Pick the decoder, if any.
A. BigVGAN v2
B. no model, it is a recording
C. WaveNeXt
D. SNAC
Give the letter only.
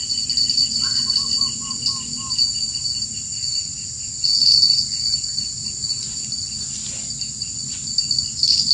B